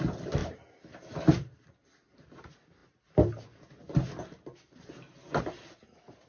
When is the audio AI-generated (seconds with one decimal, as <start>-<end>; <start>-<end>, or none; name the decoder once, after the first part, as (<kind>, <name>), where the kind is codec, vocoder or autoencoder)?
none